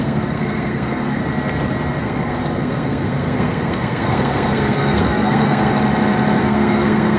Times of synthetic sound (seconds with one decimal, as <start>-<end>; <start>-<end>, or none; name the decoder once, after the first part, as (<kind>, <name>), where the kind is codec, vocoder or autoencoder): 0.0-1.2 (codec, SNAC); 2.0-5.7; 6.4-7.2